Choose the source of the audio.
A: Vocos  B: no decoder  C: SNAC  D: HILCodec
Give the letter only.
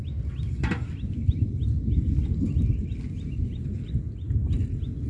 B